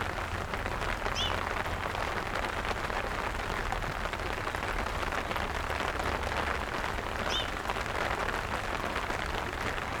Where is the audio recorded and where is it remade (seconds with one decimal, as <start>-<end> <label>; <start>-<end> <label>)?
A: 0.0-10.0 recorded